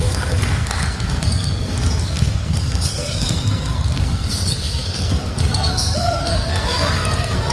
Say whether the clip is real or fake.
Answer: fake